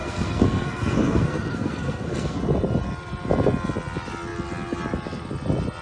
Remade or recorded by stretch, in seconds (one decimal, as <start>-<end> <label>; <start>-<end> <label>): 0.0-2.4 remade; 2.4-5.8 recorded